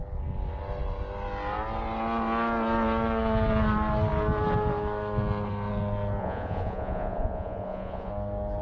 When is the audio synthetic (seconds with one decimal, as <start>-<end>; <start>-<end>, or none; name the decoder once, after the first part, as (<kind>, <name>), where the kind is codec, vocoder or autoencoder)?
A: 6.2-8.1 (vocoder, Vocos)